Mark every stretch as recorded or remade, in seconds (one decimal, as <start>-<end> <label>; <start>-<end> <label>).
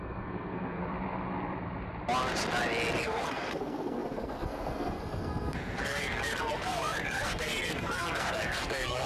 0.0-0.8 remade; 0.8-3.0 recorded; 3.0-9.1 remade